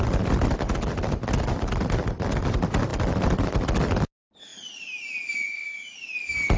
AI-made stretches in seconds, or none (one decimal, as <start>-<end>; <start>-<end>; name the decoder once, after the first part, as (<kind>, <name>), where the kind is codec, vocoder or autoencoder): none